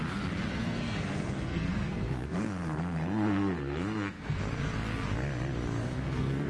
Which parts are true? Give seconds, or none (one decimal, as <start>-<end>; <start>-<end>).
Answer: 0.0-0.5; 4.4-5.8

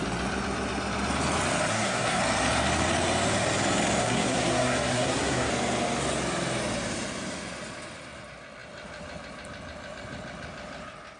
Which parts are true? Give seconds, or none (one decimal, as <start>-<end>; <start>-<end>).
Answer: 0.0-1.7; 2.2-4.0; 5.5-11.2